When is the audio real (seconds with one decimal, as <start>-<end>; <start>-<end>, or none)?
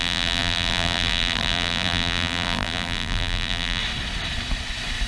3.8-5.1